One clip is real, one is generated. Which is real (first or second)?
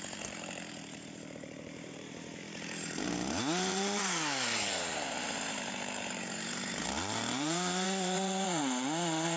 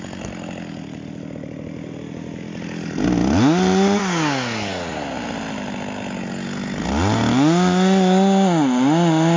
second